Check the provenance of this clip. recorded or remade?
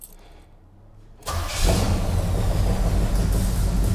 recorded